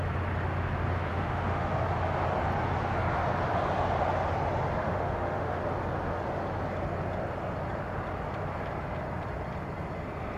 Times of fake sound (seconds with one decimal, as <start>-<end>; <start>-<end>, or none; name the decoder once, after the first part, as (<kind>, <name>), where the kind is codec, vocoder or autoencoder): 1.1-1.7 (autoencoder, DAC-VAE); 4.8-5.6

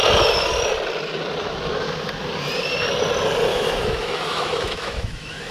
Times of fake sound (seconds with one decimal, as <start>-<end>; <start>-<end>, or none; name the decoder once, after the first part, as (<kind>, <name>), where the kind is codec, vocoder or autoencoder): 3.5-5.5 (autoencoder, DAC-VAE)

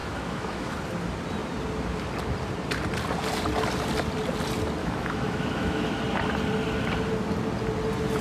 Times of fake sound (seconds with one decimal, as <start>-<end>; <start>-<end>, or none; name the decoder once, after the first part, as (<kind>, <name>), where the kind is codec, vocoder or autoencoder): 0.0-0.8 (autoencoder, DAC-VAE); 4.8-6.0

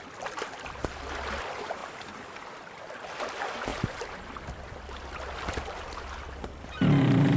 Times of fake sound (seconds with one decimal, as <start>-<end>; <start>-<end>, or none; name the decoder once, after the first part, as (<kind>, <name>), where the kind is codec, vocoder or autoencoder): none

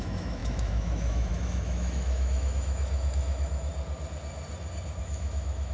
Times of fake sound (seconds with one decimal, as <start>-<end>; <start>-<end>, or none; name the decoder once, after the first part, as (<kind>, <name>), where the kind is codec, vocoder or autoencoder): 0.0-3.7 (autoencoder, DAC-VAE); 5.0-5.7